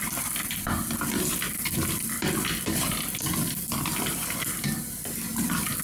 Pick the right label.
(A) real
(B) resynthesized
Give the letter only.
A